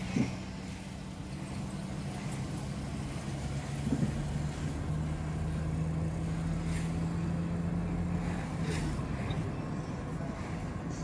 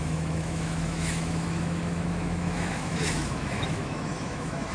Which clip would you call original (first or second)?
first